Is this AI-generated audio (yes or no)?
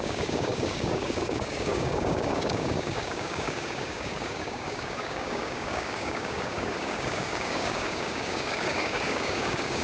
yes